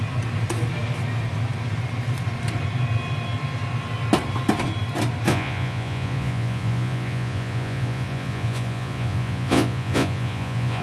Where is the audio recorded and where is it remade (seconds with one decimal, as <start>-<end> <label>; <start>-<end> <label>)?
0.0-5.3 recorded; 5.3-10.8 remade